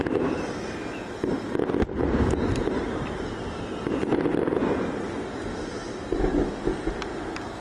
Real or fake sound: real